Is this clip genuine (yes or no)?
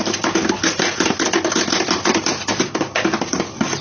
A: yes